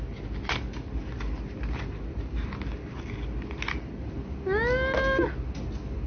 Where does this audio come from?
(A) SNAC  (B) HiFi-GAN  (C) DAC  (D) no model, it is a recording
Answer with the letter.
D